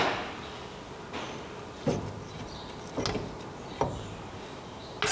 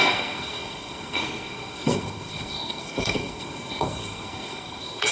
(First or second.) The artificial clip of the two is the second